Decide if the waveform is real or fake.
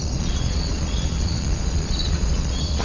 fake